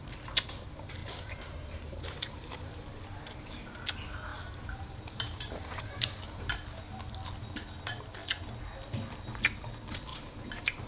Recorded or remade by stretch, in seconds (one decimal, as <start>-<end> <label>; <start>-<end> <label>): 0.0-1.0 recorded; 1.0-3.5 remade; 3.5-4.3 recorded; 4.3-6.8 remade; 6.8-10.1 recorded; 10.1-10.9 remade